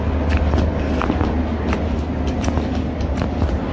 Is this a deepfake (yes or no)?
no